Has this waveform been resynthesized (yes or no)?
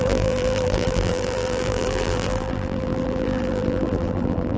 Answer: yes